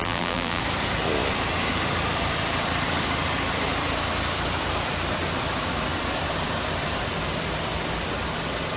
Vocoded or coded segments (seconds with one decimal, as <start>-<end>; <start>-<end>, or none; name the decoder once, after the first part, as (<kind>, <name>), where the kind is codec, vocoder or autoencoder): 0.0-0.6 (vocoder, BigVGAN v2)